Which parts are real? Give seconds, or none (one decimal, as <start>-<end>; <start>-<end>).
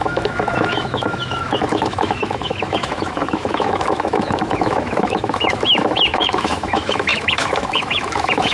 none